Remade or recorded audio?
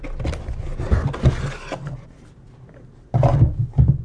recorded